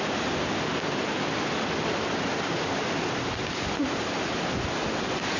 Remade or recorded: recorded